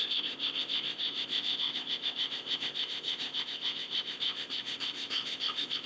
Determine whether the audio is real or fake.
fake